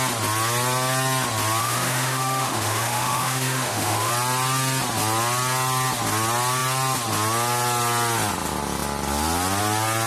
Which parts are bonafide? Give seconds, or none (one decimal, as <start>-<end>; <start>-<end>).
0.0-1.6; 4.1-10.1